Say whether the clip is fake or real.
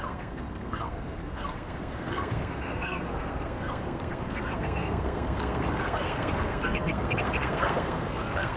fake